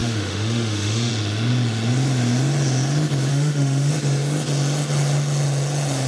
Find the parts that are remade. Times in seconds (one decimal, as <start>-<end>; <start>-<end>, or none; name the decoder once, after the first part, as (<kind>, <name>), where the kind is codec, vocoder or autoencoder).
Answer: 0.0-1.1 (autoencoder, DAC-VAE); 3.3-3.9

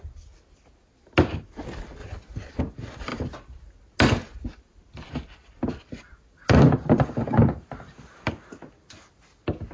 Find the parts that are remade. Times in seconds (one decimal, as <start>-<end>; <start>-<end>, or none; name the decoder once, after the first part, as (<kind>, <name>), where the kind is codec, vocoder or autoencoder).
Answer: none

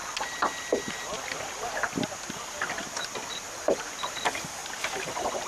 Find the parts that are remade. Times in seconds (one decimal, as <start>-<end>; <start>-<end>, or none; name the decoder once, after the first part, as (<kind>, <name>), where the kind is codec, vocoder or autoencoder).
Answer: none

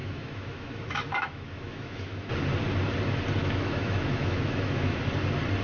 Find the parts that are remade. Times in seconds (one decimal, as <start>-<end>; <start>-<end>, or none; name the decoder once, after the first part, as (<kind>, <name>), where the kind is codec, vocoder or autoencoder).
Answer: 0.0-2.3 (autoencoder, DAC-VAE); 3.4-5.0

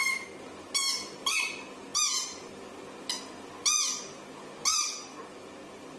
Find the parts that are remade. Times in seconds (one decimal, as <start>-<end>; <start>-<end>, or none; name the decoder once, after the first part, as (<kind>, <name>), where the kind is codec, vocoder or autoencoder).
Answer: none

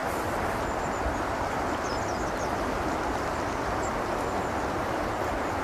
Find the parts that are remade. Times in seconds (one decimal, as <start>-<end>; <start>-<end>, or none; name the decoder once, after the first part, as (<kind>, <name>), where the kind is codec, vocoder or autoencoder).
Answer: none